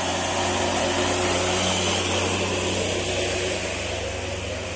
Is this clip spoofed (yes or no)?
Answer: no